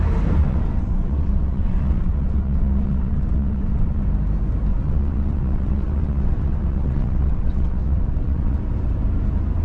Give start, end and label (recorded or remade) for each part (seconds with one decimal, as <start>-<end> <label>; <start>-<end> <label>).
0.0-0.4 recorded; 0.4-4.0 remade; 4.0-4.7 recorded; 4.7-8.7 remade; 8.7-9.6 recorded